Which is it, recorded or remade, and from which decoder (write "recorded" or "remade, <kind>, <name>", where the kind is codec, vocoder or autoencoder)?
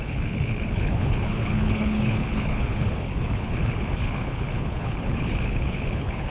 remade, codec, HILCodec